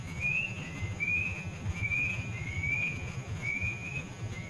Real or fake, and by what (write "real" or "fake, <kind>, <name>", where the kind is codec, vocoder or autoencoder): fake, vocoder, Vocos